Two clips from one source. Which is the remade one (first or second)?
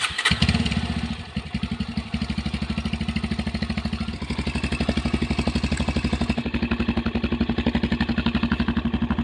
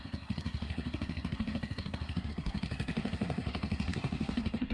second